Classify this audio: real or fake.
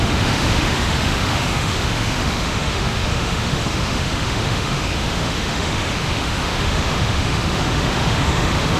fake